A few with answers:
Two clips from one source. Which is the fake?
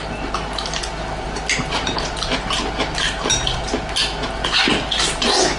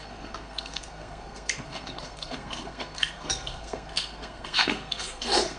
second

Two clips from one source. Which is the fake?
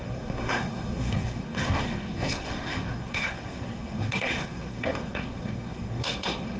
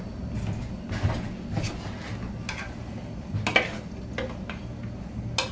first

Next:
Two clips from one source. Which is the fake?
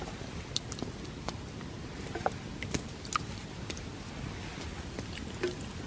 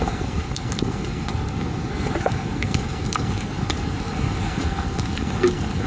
second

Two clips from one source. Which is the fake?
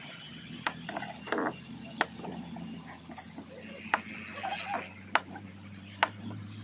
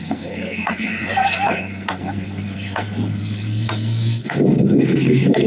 second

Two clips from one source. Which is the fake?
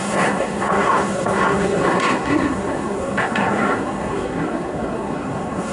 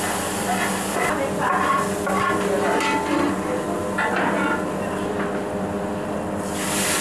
first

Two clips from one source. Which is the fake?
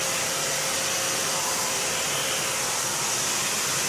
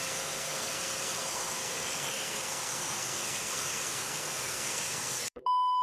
second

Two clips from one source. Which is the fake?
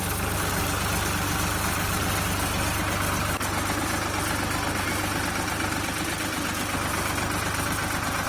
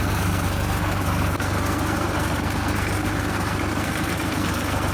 second